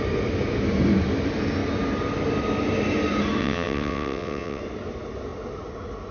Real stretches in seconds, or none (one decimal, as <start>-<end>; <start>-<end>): 0.0-3.4; 4.6-6.1